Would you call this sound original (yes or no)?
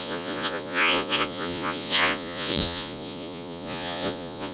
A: no